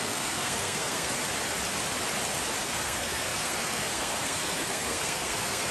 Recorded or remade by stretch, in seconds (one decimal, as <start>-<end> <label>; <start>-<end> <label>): 0.0-1.2 remade; 1.2-2.6 recorded; 2.6-5.7 remade